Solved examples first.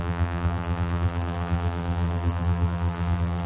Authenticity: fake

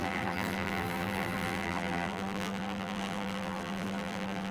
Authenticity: fake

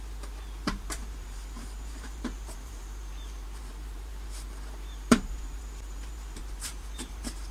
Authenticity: fake